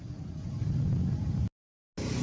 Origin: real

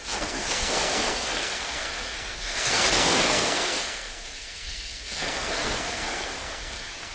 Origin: fake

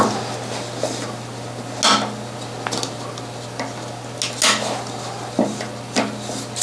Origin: real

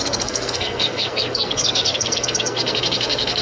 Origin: fake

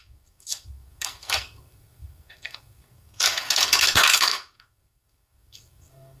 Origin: fake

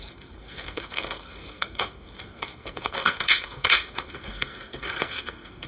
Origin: fake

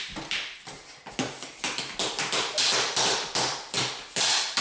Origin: real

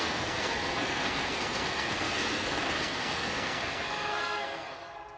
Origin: fake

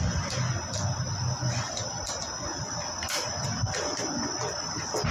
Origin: real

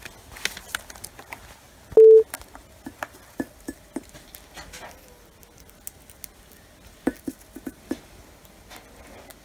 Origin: real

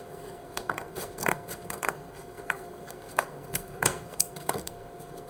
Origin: fake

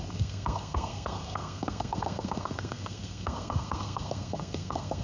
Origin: fake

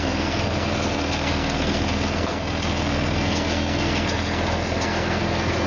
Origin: fake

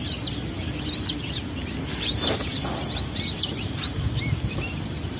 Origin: real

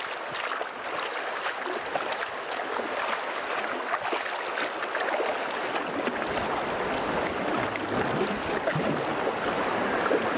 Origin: real